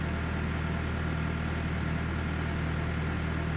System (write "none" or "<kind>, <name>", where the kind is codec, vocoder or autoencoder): none